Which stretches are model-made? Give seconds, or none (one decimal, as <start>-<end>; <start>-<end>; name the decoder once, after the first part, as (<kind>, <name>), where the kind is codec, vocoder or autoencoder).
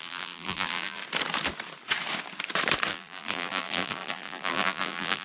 0.0-1.0 (vocoder, BigVGAN v2); 2.9-5.2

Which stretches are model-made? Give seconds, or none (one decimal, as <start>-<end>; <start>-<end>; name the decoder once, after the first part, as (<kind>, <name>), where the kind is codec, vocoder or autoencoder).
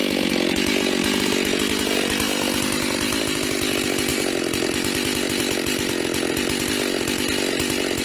4.1-5.4 (vocoder, BigVGAN v2)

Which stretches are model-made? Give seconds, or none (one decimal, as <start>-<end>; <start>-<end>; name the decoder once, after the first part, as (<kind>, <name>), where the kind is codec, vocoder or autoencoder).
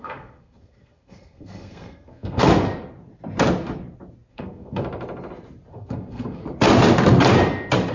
0.0-2.5 (codec, SNAC); 4.3-4.8; 5.7-6.4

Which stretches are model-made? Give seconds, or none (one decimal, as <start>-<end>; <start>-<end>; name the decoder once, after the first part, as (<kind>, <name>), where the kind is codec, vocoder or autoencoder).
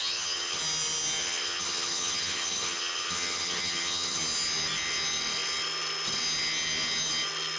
0.0-0.6 (vocoder, HiFi-GAN); 1.2-4.2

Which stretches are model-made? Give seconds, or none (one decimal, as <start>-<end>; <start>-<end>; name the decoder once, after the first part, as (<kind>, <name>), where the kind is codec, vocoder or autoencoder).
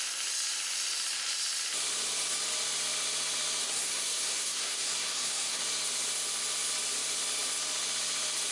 3.6-5.6 (codec, SNAC)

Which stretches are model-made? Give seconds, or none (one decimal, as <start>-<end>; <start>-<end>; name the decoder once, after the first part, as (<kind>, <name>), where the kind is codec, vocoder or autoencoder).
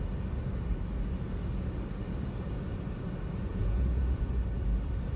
3.5-4.3 (vocoder, Vocos)